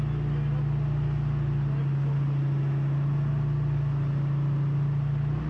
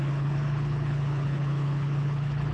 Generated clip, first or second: second